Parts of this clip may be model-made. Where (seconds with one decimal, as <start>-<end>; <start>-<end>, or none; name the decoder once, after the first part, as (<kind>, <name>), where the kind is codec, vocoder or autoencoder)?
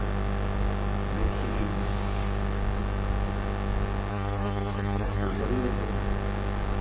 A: 4.1-5.4 (codec, SNAC)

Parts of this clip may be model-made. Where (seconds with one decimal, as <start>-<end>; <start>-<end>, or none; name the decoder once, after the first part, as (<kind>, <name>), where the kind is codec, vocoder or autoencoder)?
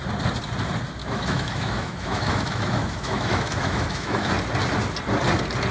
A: 1.0-4.3 (autoencoder, DAC-VAE)